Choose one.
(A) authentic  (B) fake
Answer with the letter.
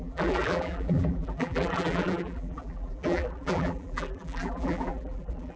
B